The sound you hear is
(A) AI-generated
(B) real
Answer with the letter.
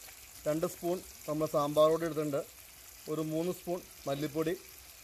B